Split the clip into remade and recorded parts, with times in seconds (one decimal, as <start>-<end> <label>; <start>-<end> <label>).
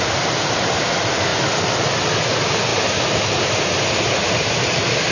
0.0-2.7 recorded; 2.7-5.1 remade